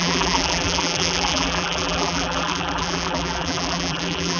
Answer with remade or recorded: remade